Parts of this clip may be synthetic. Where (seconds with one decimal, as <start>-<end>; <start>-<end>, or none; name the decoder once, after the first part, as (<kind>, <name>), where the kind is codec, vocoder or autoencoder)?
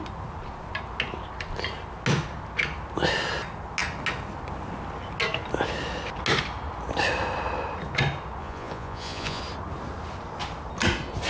8.4-9.4 (vocoder, Vocos)